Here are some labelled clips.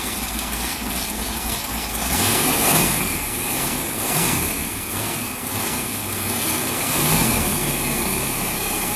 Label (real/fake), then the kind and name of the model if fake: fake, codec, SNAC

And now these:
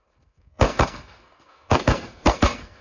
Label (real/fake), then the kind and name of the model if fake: fake, codec, SNAC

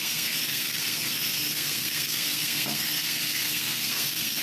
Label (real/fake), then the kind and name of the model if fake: fake, codec, SNAC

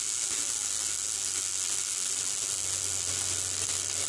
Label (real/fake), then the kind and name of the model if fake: real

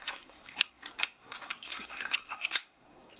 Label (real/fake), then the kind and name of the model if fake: fake, codec, SNAC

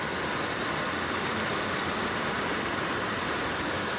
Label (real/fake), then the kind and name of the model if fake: real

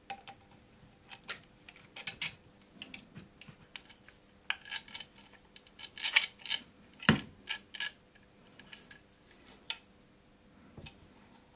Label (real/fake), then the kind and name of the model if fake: real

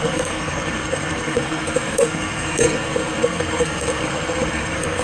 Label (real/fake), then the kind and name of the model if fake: fake, codec, SNAC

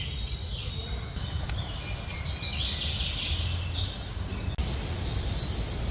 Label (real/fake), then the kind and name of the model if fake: real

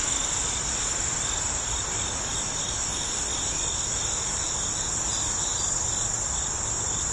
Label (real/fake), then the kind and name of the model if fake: real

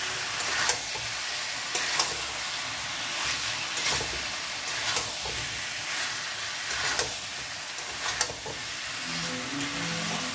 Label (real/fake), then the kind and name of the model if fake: real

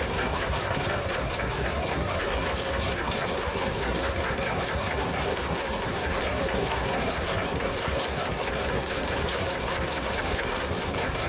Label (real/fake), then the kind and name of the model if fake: fake, codec, SNAC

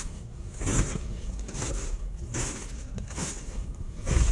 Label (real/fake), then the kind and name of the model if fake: fake, codec, SNAC